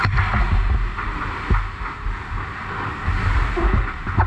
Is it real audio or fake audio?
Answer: real